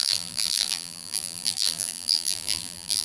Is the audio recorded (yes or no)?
no